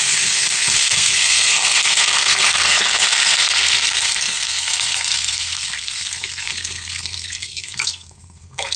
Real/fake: fake